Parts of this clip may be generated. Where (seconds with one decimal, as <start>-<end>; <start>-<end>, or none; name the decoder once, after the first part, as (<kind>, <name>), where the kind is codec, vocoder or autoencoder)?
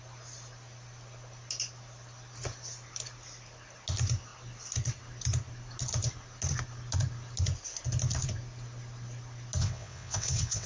9.6-10.7 (vocoder, WaveNeXt)